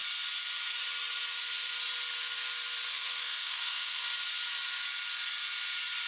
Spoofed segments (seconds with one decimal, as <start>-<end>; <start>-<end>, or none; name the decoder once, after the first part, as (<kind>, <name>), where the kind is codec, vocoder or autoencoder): 2.9-4.0 (codec, SNAC)

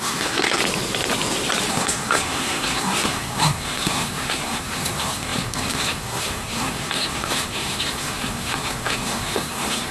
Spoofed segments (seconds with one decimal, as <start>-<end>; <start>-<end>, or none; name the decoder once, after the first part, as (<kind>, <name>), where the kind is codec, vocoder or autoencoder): 0.0-0.6 (codec, SNAC); 1.7-9.9

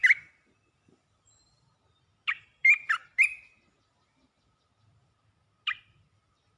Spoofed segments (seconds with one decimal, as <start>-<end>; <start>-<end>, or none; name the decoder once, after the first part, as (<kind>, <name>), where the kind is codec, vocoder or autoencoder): none

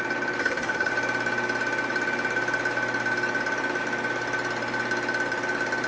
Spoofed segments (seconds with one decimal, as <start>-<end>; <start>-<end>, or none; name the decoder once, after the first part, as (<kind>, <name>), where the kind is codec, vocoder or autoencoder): 0.4-0.9 (codec, SNAC)